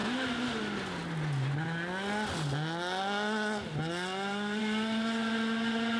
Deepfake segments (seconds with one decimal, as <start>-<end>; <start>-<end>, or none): none